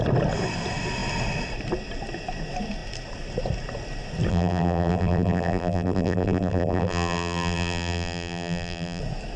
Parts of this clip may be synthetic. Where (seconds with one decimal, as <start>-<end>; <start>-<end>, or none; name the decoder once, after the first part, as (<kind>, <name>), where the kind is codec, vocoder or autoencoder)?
4.3-9.0 (vocoder, BigVGAN v2)